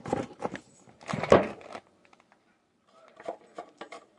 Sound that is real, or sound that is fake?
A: fake